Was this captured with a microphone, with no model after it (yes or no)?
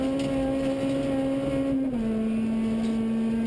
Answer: yes